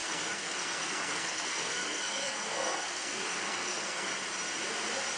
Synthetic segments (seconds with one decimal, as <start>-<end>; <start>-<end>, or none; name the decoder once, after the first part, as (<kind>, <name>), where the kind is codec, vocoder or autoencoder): 0.0-4.1 (codec, SNAC)